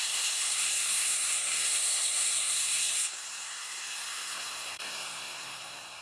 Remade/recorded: remade